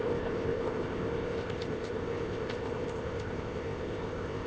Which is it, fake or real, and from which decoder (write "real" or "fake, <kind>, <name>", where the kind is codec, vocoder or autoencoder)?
fake, codec, ZipCodec